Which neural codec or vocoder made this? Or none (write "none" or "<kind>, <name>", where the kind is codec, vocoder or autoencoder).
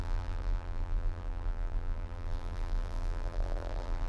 vocoder, BigVGAN v2